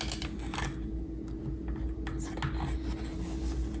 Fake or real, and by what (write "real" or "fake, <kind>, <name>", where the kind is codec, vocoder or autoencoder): real